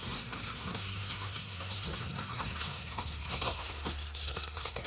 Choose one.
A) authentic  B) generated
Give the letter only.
B